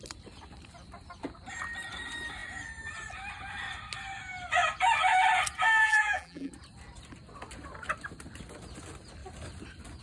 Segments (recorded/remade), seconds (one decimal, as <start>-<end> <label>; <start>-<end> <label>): 0.0-5.8 recorded; 5.8-6.5 remade; 6.5-10.0 recorded